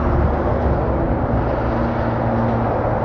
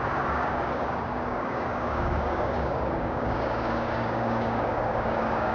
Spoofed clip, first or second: second